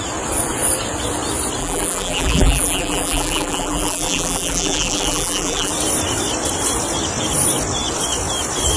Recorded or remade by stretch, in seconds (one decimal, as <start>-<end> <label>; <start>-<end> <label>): 0.0-1.6 recorded; 1.6-5.7 remade; 5.7-8.8 recorded

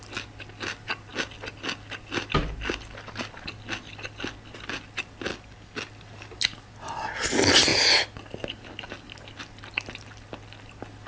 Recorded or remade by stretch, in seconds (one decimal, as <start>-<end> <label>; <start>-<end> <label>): 0.0-5.3 recorded; 5.3-5.9 remade; 5.9-11.1 recorded